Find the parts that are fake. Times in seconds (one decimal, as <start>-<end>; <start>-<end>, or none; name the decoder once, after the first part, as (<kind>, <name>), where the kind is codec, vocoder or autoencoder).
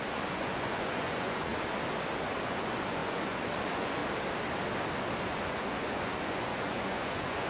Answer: 0.0-1.5 (vocoder, Vocos); 2.4-4.0; 5.2-7.5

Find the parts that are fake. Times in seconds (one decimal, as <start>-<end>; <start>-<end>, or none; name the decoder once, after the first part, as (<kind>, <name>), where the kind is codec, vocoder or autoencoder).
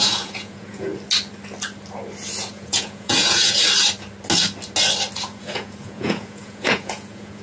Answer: 0.0-0.9 (vocoder, Vocos); 2.5-3.6; 5.2-7.4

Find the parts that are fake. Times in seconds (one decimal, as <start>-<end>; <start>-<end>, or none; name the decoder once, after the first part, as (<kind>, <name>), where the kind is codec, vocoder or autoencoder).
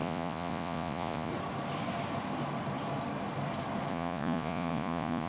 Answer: 0.0-1.3 (vocoder, Vocos); 3.9-5.3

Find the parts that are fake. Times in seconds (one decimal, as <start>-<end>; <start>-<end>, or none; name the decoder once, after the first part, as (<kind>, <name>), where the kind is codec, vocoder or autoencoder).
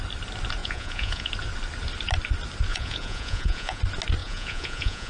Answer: 0.6-1.3 (vocoder, Vocos); 2.7-3.8; 4.2-5.1